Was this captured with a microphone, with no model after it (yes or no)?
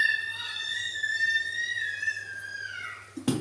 no